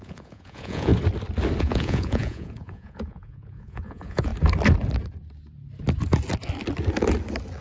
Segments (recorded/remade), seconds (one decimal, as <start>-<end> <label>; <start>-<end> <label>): 0.0-0.9 remade; 0.9-1.6 recorded; 1.6-4.3 remade; 4.3-7.6 recorded